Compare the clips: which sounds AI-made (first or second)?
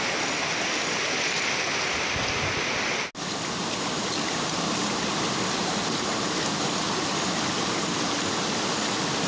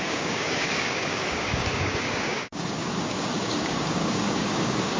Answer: second